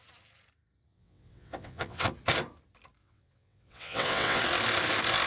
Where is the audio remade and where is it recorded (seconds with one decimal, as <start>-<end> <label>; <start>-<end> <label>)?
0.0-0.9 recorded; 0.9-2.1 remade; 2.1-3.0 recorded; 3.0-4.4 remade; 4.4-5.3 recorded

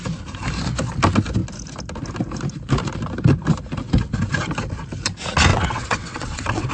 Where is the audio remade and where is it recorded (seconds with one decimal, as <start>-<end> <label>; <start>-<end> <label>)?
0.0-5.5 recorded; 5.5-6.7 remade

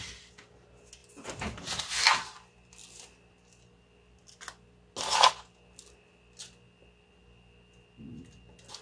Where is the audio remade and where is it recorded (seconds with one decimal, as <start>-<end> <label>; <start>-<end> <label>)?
0.0-8.8 recorded